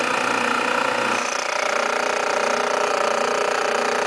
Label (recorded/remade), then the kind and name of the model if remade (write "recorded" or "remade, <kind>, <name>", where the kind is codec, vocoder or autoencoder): recorded